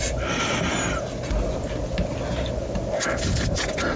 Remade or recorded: recorded